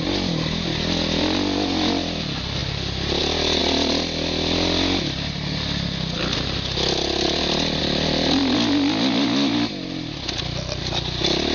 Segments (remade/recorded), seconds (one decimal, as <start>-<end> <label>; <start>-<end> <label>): 0.0-11.5 recorded